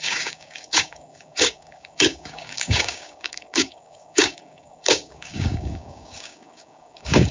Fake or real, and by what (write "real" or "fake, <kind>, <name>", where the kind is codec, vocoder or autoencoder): fake, codec, DAC